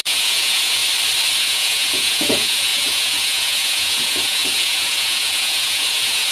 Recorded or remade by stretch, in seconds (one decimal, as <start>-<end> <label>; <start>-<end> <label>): 0.0-0.8 remade; 0.8-1.4 recorded; 1.4-6.3 remade